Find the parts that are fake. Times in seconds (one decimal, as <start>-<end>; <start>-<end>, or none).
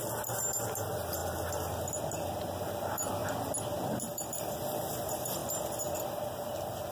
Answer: 0.0-1.2; 2.6-3.2; 4.0-5.4; 6.0-6.9